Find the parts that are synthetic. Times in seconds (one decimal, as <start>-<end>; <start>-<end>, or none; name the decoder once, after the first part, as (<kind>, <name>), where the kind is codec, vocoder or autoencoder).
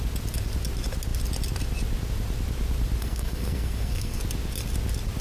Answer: 3.0-4.2 (codec, SNAC)